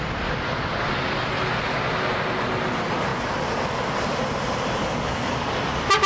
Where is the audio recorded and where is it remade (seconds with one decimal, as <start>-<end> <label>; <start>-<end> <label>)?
0.0-4.8 recorded; 4.8-5.5 remade; 5.5-6.1 recorded